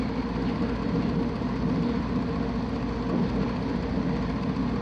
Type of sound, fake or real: real